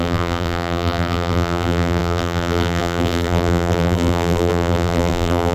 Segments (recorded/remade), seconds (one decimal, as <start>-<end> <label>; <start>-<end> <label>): 0.0-5.5 remade